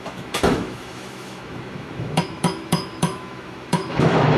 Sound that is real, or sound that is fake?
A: fake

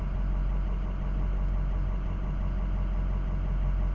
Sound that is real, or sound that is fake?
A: real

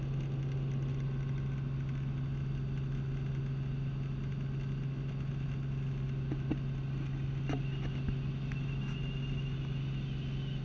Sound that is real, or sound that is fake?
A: real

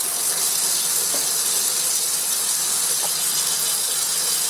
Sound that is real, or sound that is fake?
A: real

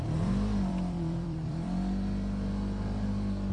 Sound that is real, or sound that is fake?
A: fake